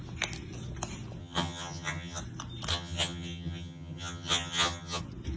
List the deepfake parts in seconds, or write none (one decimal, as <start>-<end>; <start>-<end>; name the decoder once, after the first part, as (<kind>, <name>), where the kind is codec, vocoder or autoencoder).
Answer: 1.2-2.2 (vocoder, HiFi-GAN); 2.7-5.0